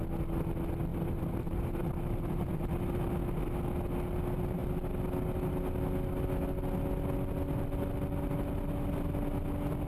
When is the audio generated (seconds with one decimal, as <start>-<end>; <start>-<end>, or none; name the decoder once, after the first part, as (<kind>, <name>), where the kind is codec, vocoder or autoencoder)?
0.9-3.1 (vocoder, BigVGAN v2)